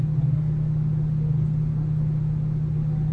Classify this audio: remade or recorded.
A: recorded